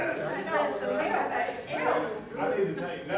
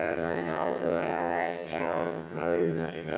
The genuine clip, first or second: first